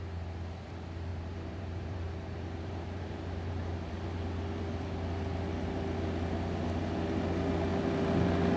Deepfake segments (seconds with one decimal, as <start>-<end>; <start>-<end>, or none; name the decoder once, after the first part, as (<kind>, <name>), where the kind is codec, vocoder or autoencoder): 1.1-3.9 (vocoder, BigVGAN v2)